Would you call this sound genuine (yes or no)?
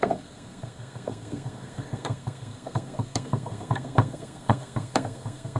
no